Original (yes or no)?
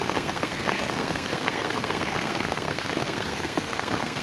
no